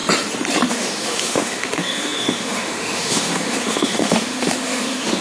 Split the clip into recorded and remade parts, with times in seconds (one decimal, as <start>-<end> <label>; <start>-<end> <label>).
0.0-0.7 recorded; 0.7-5.2 remade